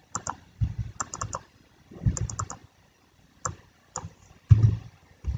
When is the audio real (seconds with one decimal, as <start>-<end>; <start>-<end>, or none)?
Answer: 0.0-5.4